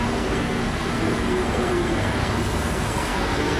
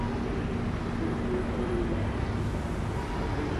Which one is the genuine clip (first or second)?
second